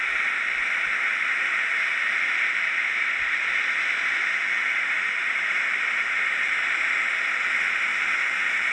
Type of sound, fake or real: fake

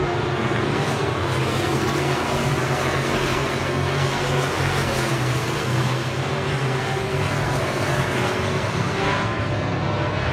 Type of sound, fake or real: fake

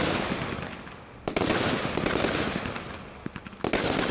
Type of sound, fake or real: real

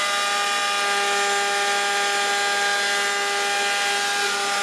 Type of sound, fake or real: real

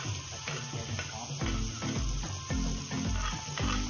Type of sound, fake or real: real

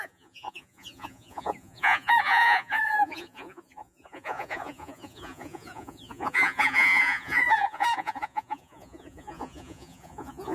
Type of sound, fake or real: fake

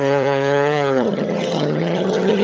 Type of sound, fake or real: fake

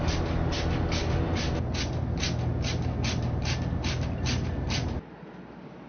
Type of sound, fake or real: real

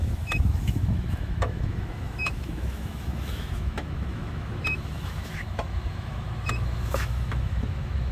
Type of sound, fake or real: fake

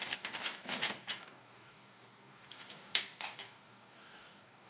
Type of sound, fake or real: fake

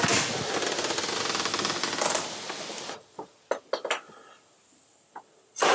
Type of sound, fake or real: real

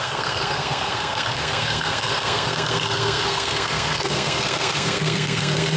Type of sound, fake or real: fake